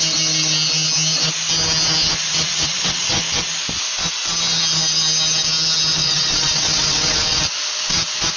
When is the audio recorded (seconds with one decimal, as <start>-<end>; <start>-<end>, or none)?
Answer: 0.0-2.2; 3.1-6.0; 7.4-8.4